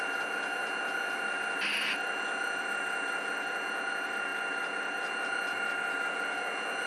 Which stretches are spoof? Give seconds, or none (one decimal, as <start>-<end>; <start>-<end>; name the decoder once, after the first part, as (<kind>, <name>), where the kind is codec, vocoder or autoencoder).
none